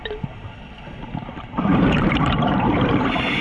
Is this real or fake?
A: fake